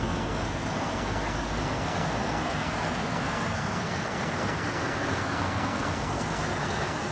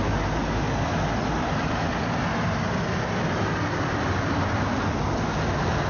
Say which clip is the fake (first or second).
first